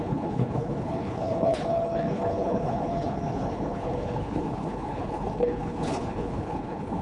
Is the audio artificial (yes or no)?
yes